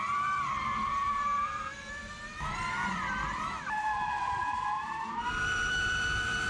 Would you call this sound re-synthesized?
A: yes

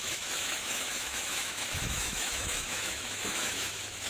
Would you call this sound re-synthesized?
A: yes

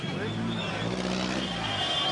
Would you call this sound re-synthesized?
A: no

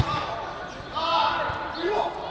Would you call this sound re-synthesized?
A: no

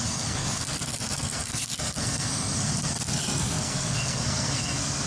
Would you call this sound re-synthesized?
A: yes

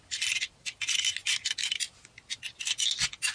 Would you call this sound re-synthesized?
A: no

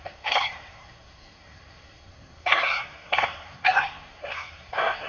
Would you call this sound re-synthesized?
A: yes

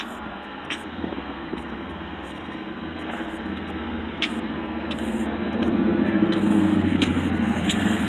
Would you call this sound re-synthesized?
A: yes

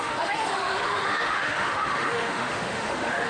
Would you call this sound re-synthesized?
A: yes